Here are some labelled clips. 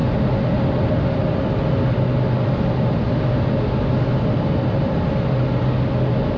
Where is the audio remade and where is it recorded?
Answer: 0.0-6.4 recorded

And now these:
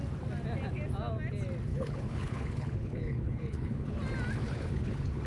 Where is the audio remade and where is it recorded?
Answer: 0.0-1.7 recorded; 1.7-4.0 remade; 4.0-4.4 recorded; 4.4-5.3 remade

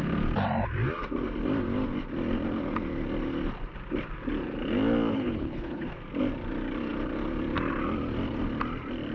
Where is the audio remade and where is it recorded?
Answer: 0.0-5.1 recorded; 5.1-5.9 remade; 5.9-9.1 recorded

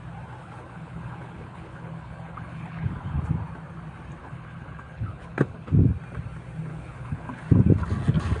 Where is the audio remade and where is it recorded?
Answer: 0.0-0.4 recorded; 0.4-3.2 remade; 3.2-4.2 recorded; 4.2-5.7 remade; 5.7-6.7 recorded; 6.7-7.4 remade; 7.4-8.4 recorded

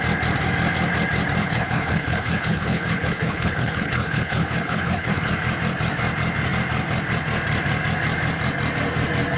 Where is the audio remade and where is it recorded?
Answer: 0.0-1.4 recorded; 1.4-5.3 remade; 5.3-9.4 recorded

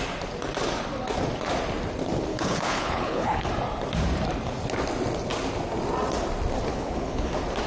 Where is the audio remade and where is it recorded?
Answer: 0.0-2.3 recorded; 2.3-3.5 remade; 3.5-6.7 recorded; 6.7-7.3 remade; 7.3-7.7 recorded